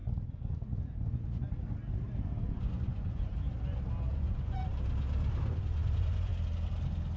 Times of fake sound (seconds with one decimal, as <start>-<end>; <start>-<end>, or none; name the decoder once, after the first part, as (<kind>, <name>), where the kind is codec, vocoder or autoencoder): 2.5-3.3 (vocoder, Vocos); 4.1-4.7; 5.5-6.3